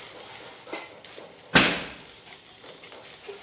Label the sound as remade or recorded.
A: recorded